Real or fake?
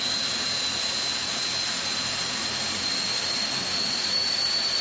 real